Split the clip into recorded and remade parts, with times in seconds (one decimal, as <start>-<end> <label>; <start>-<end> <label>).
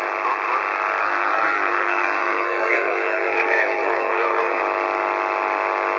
0.0-1.0 recorded; 1.0-4.6 remade; 4.6-6.0 recorded